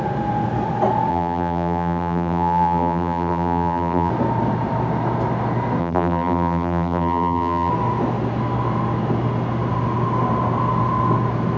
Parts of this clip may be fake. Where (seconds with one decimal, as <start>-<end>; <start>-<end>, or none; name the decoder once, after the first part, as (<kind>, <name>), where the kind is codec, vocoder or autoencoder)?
1.1-4.1 (vocoder, BigVGAN v2); 5.8-7.7